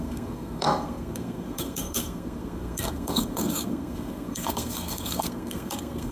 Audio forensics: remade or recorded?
remade